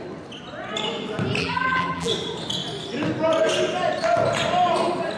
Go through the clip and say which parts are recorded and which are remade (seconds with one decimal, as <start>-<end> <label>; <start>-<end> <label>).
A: 0.0-1.4 recorded; 1.4-2.1 remade; 2.1-5.2 recorded